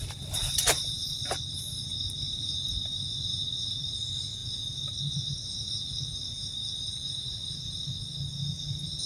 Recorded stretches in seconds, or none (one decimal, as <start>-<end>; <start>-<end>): none